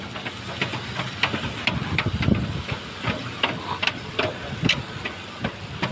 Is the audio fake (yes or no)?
no